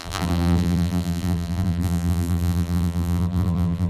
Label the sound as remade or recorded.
remade